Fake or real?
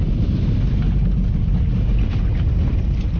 real